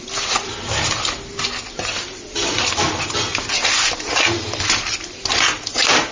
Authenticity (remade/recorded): recorded